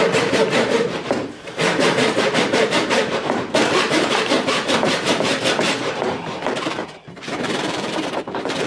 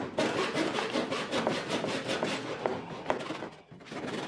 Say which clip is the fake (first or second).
first